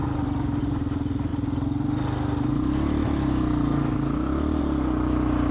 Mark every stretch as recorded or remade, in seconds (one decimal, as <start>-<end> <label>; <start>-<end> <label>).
0.0-5.5 recorded

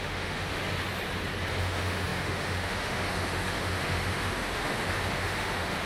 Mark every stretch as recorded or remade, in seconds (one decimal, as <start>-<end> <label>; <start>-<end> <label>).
0.0-0.6 remade; 0.6-1.5 recorded; 1.5-5.9 remade

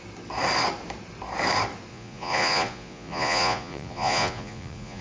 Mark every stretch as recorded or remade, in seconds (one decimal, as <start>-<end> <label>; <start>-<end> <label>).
0.0-1.9 recorded; 1.9-5.0 remade

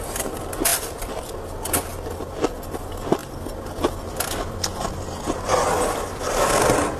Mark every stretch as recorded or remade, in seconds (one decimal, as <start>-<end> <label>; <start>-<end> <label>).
0.0-0.7 recorded; 0.7-1.3 remade; 1.3-7.0 recorded

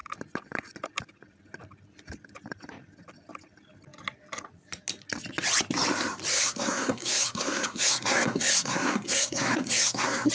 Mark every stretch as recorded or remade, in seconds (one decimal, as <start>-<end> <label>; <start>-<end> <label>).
0.0-6.3 recorded; 6.3-10.3 remade